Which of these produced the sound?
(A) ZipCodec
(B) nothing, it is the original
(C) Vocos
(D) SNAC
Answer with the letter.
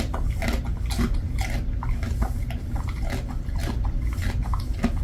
B